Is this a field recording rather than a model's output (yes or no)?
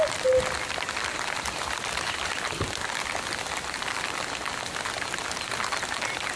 yes